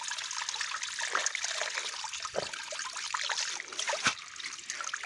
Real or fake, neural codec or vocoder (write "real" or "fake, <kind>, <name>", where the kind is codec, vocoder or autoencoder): real